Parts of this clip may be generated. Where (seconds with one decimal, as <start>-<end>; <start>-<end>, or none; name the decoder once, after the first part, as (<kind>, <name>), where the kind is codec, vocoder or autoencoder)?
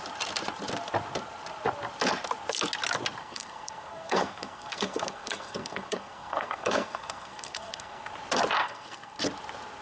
3.2-8.1 (codec, SNAC); 8.6-9.2